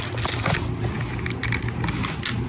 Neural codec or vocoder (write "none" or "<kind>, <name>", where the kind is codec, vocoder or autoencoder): none